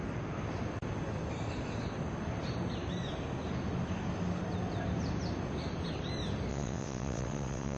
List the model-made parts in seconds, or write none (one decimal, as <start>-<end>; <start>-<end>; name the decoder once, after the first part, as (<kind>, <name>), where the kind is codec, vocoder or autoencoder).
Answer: 6.5-7.8 (vocoder, WaveNeXt)